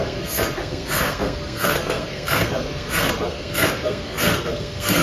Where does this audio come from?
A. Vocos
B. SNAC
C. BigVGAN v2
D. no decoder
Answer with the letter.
B